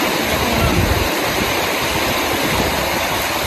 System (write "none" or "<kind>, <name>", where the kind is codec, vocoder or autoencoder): none